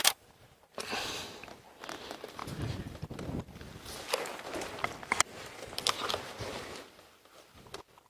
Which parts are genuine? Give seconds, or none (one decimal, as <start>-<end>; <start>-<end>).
1.2-8.1